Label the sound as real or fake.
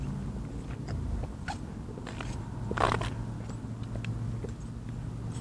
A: real